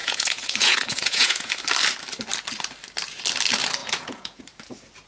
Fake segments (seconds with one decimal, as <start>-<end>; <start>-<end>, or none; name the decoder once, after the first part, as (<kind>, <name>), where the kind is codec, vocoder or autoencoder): 0.0-1.5 (vocoder, Vocos); 3.8-4.4